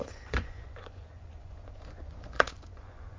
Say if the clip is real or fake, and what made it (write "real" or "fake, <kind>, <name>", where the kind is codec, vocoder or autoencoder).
fake, vocoder, Vocos